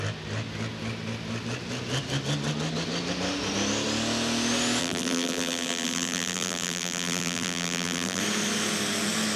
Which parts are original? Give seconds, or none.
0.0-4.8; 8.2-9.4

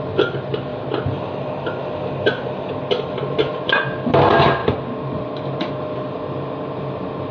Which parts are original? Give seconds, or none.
0.0-4.6; 5.7-7.3